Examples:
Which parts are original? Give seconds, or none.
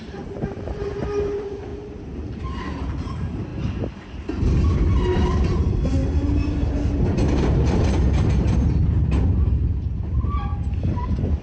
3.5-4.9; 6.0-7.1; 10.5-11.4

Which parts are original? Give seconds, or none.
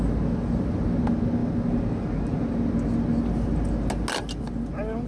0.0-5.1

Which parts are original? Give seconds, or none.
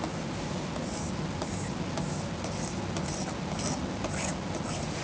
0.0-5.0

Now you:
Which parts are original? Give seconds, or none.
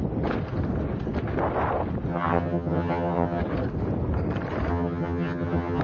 0.0-2.1; 3.4-4.7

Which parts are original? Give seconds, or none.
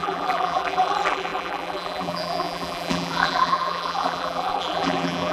none